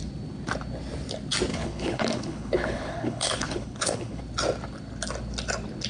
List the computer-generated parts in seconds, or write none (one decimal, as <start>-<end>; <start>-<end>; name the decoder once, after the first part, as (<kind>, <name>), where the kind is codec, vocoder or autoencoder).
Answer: 1.5-4.2 (codec, HILCodec)